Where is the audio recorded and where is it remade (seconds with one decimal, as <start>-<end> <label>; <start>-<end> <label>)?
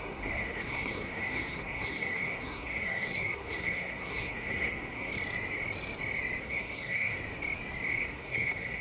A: 0.0-5.1 remade; 5.1-6.4 recorded; 6.4-7.2 remade; 7.2-8.0 recorded; 8.0-8.8 remade